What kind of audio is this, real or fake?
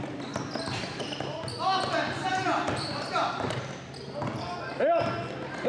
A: real